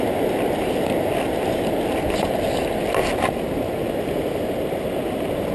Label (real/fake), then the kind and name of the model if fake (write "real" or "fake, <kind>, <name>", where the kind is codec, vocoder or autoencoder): real